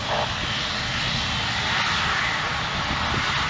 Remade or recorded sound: recorded